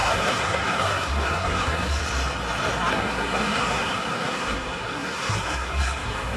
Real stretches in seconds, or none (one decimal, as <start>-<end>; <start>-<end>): 2.0-2.9